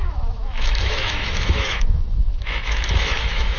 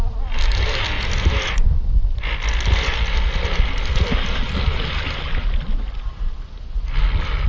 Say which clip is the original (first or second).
second